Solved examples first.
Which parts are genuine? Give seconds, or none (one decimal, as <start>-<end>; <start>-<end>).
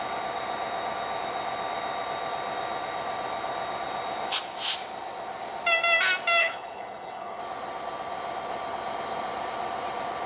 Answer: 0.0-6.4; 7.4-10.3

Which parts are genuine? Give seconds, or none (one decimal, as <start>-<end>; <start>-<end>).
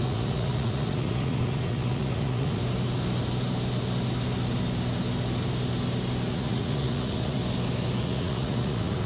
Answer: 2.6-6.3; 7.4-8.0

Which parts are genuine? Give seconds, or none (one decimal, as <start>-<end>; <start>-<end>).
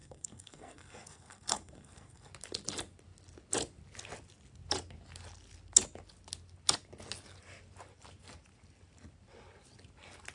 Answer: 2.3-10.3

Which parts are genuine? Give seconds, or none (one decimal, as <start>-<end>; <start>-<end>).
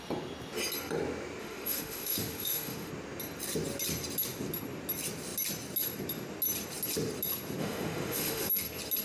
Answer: 0.0-1.4; 2.9-7.6; 8.5-9.0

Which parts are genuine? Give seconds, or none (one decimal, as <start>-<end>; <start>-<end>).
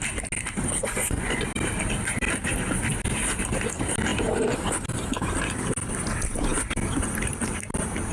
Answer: 0.0-0.8; 1.4-8.1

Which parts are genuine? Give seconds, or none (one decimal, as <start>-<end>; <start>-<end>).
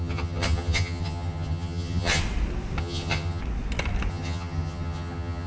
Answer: 2.2-2.8; 3.4-4.1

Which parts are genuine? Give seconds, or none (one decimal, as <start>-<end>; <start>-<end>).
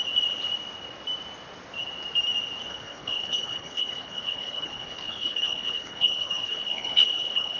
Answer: 0.0-2.7